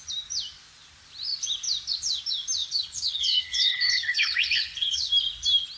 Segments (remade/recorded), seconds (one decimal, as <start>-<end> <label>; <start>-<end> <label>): 0.0-2.6 recorded; 2.6-5.1 remade; 5.1-5.8 recorded